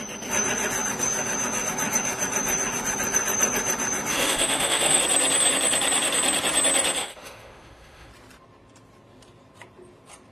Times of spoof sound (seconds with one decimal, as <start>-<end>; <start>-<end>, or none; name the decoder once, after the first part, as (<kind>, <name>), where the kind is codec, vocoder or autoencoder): 4.1-5.0 (autoencoder, DAC-VAE); 7.0-8.1